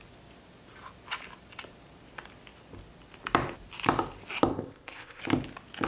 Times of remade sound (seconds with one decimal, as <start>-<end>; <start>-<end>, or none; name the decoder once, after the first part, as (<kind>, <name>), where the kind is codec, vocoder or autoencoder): 4.5-5.2 (codec, ZipCodec)